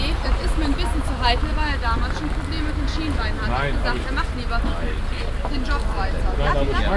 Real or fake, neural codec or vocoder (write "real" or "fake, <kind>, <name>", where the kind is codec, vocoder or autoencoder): real